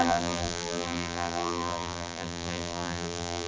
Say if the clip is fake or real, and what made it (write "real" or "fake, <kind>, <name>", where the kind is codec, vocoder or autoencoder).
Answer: fake, vocoder, BigVGAN v2